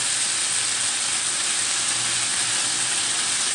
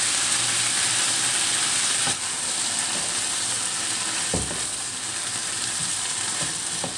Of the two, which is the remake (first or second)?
second